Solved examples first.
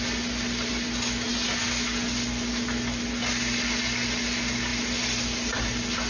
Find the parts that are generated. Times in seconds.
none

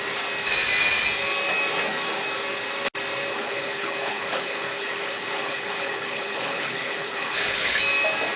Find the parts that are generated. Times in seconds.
3.3-7.8 (codec, HILCodec)

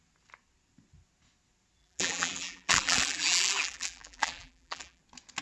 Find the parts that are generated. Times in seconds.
1.8-5.0 (vocoder, BigVGAN v2)

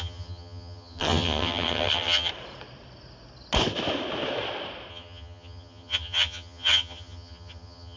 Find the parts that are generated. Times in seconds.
0.0-2.3 (vocoder, HiFi-GAN); 4.9-8.0

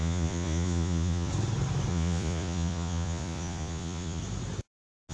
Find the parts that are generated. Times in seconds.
0.0-1.3 (vocoder, Vocos); 1.9-4.2

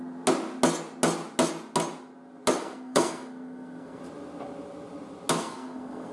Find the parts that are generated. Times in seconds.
2.6-4.0 (codec, SNAC); 5.4-6.1